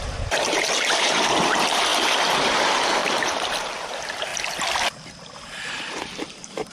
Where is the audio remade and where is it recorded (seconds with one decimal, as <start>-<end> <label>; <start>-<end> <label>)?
0.0-1.9 remade; 1.9-2.4 recorded; 2.4-4.3 remade; 4.3-5.7 recorded; 5.7-6.7 remade